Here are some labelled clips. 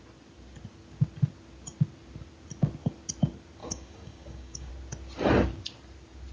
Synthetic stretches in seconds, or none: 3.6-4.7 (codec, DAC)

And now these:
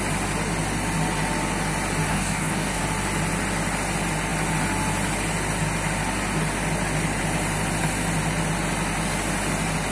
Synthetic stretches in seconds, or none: 2.1-2.8 (codec, DAC)